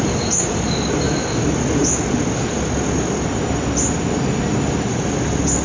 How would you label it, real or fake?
real